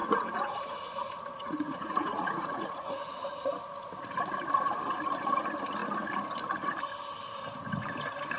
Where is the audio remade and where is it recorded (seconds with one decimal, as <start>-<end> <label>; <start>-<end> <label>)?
0.0-3.5 remade; 3.5-8.4 recorded